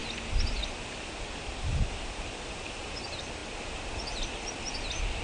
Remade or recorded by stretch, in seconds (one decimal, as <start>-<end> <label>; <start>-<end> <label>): 0.0-0.7 recorded; 0.7-5.2 remade